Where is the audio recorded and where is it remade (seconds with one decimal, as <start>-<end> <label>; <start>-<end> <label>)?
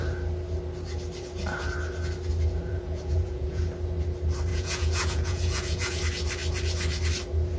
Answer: 0.0-2.7 recorded; 2.7-3.6 remade; 3.6-4.5 recorded; 4.5-6.0 remade; 6.0-7.6 recorded